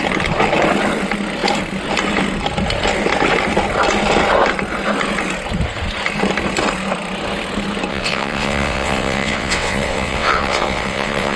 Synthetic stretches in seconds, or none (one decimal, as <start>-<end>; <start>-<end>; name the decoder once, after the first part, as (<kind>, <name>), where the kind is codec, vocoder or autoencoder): 7.9-11.4 (vocoder, WaveNeXt)